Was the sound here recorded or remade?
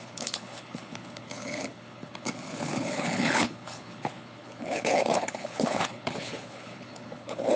remade